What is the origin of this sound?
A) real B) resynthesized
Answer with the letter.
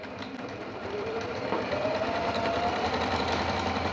A